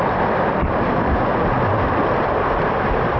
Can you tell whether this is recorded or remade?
recorded